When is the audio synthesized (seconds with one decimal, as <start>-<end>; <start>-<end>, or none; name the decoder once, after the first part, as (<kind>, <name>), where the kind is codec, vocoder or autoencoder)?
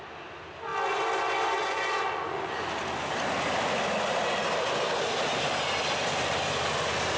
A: 1.6-2.7 (vocoder, Vocos)